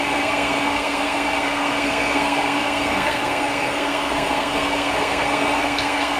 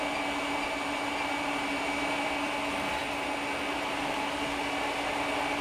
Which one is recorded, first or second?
second